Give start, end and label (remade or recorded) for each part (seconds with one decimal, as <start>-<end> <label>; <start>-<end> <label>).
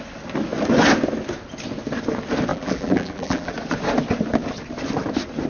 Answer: 0.0-2.5 recorded; 2.5-3.5 remade; 3.5-5.5 recorded